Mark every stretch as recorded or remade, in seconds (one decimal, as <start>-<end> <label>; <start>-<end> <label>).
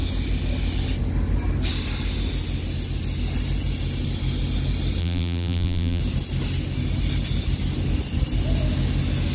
0.0-5.0 recorded; 5.0-6.0 remade; 6.0-9.3 recorded